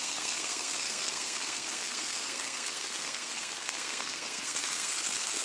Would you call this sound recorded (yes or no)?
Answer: no